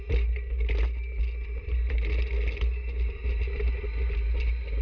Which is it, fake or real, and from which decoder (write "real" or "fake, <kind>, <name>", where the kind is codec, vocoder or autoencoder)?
real